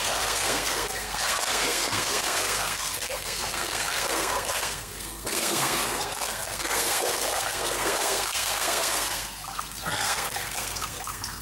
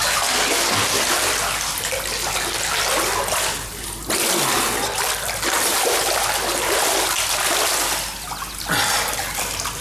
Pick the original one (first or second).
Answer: second